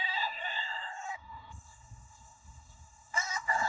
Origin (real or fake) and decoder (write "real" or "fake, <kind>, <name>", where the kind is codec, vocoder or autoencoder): fake, codec, SNAC